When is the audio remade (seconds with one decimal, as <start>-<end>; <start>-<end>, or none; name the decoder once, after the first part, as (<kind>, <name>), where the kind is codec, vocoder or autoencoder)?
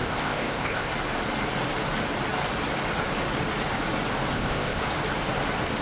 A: 0.0-0.9 (codec, ZipCodec); 4.3-4.8